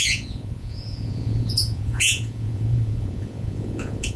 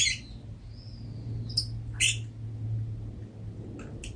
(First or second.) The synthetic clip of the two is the first